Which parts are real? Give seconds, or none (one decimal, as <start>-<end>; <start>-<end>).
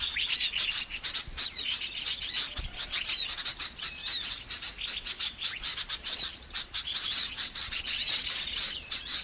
4.0-5.1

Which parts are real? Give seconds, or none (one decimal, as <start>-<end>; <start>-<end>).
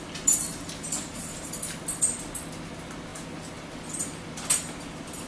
0.0-0.5; 1.5-5.3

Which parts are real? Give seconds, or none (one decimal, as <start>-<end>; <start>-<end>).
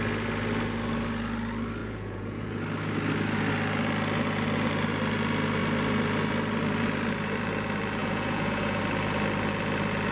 0.0-1.8; 2.6-8.0; 8.8-10.1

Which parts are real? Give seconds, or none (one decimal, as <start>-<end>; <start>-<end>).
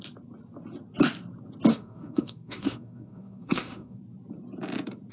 0.0-1.7; 4.0-5.1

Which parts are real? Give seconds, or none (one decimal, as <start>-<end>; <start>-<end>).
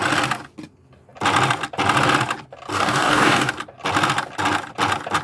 0.0-2.7; 3.5-5.2